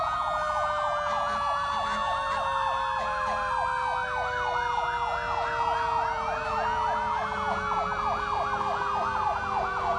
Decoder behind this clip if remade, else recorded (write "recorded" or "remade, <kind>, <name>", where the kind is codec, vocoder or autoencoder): recorded